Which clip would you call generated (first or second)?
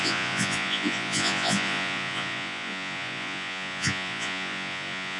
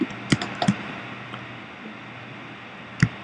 first